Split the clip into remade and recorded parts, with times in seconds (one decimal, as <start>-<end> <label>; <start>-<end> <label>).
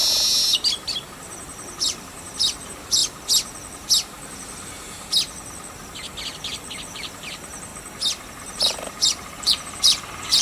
0.0-1.2 recorded; 1.2-3.0 remade; 3.0-6.9 recorded; 6.9-7.7 remade; 7.7-8.4 recorded; 8.4-10.4 remade